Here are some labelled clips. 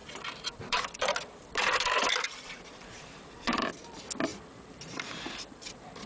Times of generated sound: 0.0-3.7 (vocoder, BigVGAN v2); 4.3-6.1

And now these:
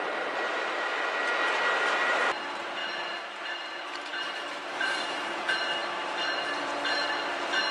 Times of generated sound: 0.0-0.9 (vocoder, BigVGAN v2); 2.1-2.8; 3.4-7.7

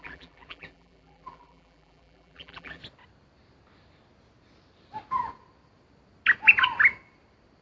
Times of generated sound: 0.0-2.8 (vocoder, BigVGAN v2)